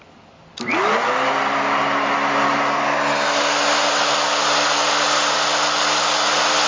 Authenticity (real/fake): real